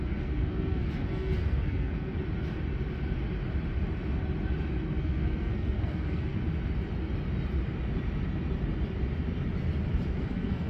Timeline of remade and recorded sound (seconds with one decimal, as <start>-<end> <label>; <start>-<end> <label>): 0.0-2.2 remade; 2.2-5.0 recorded; 5.0-6.4 remade; 6.4-10.2 recorded; 10.2-10.7 remade